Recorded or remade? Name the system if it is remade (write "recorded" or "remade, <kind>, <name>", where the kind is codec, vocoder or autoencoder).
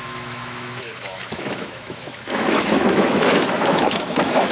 remade, autoencoder, DAC-VAE